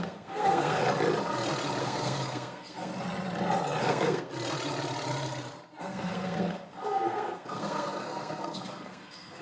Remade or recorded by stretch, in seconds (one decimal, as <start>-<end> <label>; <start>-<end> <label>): 0.0-0.8 remade; 0.8-1.8 recorded; 1.8-2.9 remade; 2.9-3.8 recorded; 3.8-4.3 remade; 4.3-5.8 recorded; 5.8-9.4 remade